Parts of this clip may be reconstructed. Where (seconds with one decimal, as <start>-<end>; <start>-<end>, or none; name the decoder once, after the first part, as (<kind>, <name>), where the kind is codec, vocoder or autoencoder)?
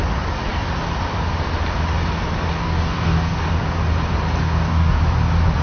2.6-3.5 (codec, DAC); 4.4-5.0